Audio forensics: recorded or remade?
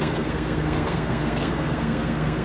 remade